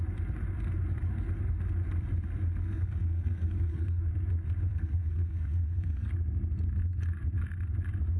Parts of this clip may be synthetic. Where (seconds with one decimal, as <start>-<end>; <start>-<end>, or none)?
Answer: 2.6-4.0; 4.7-6.1